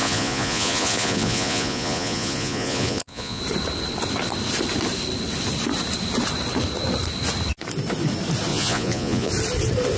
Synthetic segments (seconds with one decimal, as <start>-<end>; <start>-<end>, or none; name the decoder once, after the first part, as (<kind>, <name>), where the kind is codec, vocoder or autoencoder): 0.0-3.4 (vocoder, Vocos); 8.5-9.3